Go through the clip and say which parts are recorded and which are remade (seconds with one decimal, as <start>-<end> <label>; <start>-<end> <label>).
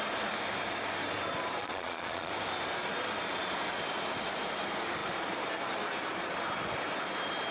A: 0.0-1.6 recorded; 1.6-2.3 remade; 2.3-7.5 recorded